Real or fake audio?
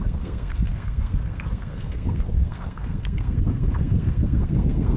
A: fake